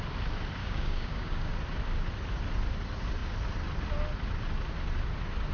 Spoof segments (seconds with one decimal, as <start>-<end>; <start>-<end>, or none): 0.6-1.5